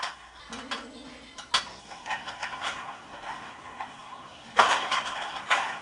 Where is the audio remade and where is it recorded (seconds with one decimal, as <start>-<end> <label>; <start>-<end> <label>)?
0.0-0.4 remade; 0.4-1.8 recorded; 1.8-5.8 remade